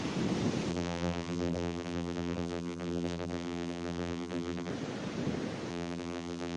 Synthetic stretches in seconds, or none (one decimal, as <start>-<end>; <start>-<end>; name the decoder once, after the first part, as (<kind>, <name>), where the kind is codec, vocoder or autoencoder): 0.7-4.7 (vocoder, BigVGAN v2); 5.7-6.6